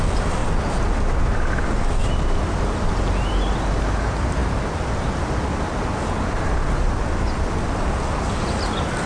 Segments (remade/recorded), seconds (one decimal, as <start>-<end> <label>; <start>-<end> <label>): 0.0-9.1 recorded